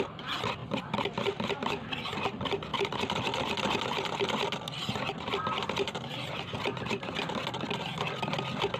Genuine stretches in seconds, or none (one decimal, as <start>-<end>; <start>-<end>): 0.0-0.6; 1.9-8.8

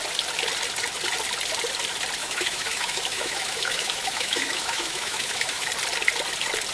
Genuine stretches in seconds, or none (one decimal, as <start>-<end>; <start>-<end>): 0.0-2.2; 5.7-6.7

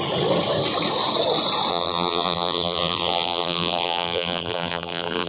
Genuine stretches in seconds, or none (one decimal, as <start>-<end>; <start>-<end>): 0.0-1.7

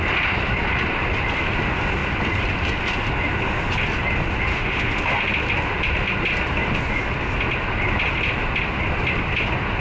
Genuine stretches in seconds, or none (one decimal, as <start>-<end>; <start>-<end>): 0.0-4.5; 5.2-9.8